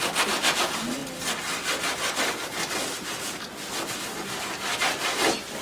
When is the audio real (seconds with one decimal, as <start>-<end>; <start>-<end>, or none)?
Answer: 0.0-5.6